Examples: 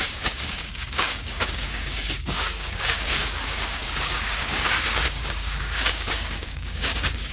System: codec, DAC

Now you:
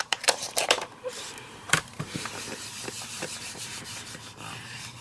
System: vocoder, BigVGAN v2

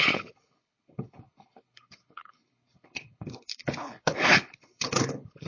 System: codec, HILCodec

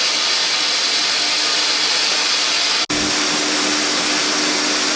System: none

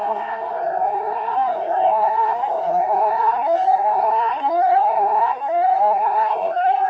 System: codec, SNAC